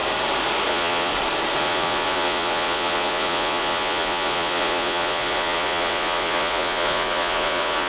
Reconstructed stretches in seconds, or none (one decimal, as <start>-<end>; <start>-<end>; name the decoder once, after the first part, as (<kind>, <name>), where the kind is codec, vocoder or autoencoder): 0.7-1.1 (vocoder, Vocos); 1.6-7.9